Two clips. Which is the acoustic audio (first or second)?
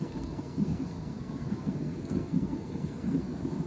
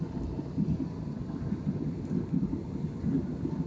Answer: second